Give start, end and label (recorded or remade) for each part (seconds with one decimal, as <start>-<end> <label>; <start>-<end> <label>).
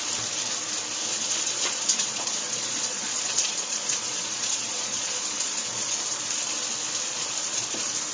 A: 0.0-1.1 recorded; 1.1-6.0 remade; 6.0-8.1 recorded